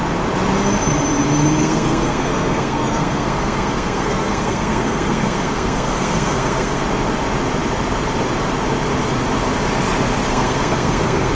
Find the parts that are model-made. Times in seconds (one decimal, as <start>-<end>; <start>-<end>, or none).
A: 1.6-6.8; 10.3-11.3